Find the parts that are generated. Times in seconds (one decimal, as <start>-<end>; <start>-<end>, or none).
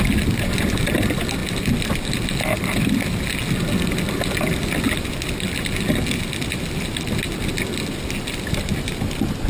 none